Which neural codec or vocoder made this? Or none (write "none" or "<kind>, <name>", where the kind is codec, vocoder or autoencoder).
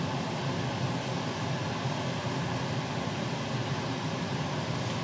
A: none